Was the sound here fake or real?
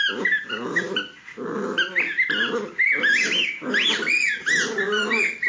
real